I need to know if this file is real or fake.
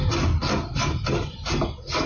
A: real